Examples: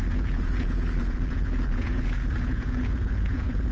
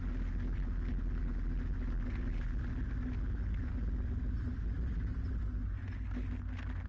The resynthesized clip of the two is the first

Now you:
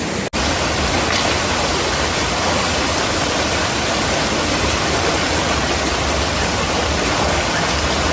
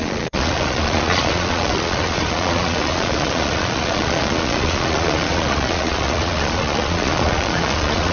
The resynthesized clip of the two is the second